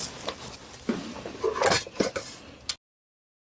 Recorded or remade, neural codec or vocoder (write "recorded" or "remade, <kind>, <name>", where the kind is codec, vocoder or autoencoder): recorded